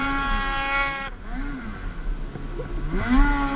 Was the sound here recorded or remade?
recorded